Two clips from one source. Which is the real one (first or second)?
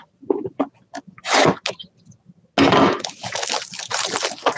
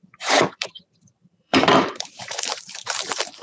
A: first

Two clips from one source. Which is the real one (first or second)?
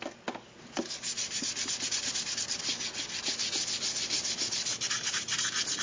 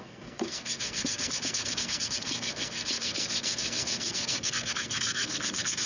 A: first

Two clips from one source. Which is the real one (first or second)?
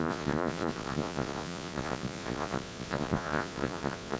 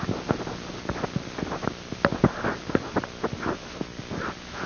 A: second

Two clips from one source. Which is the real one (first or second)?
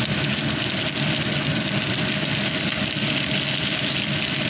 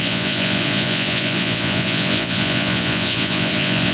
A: first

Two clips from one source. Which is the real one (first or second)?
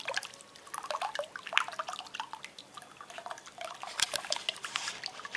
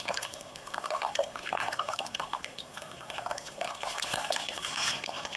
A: first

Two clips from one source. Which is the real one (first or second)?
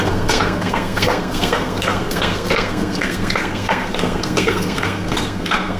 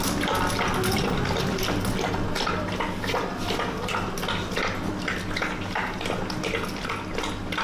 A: second